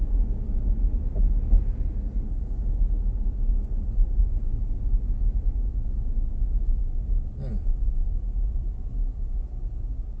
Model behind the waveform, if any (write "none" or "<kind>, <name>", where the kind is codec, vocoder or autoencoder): none